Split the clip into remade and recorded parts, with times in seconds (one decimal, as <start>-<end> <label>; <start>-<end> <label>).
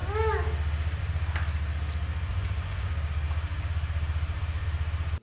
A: 0.0-2.3 recorded; 2.3-2.9 remade; 2.9-5.2 recorded